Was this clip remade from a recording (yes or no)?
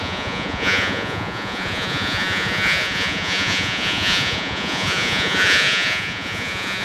yes